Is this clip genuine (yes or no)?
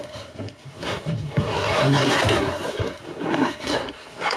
no